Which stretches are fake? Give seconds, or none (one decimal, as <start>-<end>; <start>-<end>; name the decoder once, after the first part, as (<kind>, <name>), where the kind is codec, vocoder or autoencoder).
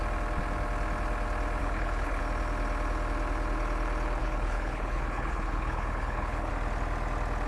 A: 1.6-2.2 (codec, HILCodec); 4.2-6.5